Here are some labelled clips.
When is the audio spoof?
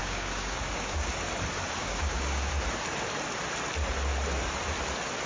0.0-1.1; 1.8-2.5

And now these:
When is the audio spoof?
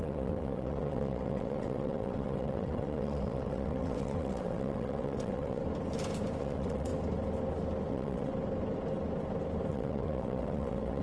0.0-5.6; 6.4-6.9; 7.9-8.3; 9.7-11.0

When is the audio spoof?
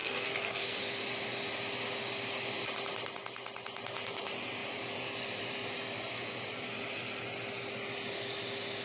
0.0-0.8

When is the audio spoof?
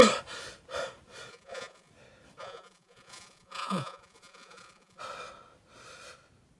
1.3-1.9; 2.4-5.0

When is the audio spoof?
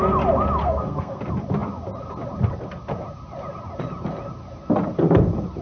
0.6-1.2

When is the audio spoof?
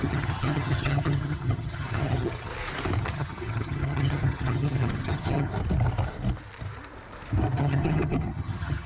0.0-2.5; 3.0-5.5; 7.6-8.9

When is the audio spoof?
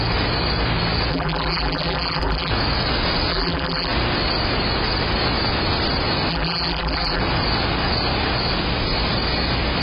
1.1-2.5; 3.3-3.9; 6.3-7.2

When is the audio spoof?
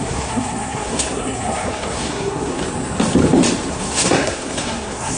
0.0-2.6; 3.7-5.2